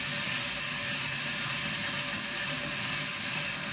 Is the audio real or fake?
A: real